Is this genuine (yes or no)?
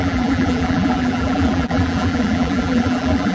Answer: no